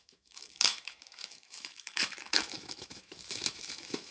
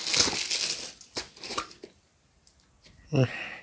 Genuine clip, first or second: second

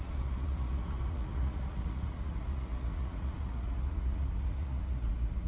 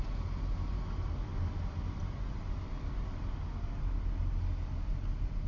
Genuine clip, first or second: second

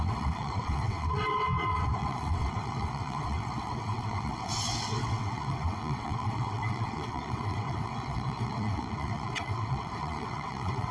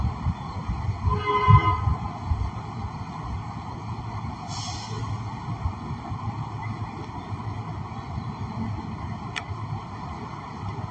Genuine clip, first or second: second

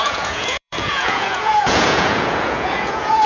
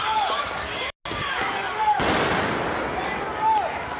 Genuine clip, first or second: second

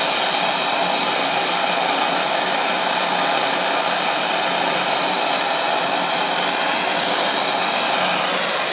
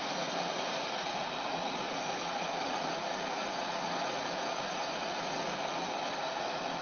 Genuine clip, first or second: first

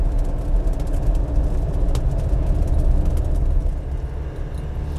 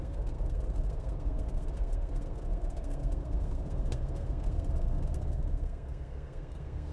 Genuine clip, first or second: first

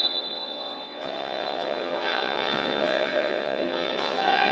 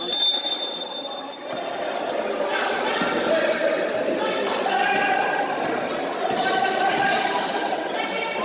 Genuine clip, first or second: second